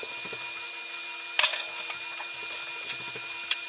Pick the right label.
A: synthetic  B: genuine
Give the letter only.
B